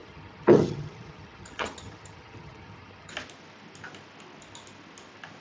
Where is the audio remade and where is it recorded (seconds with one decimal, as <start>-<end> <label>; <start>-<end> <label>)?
0.0-3.1 remade; 3.1-5.4 recorded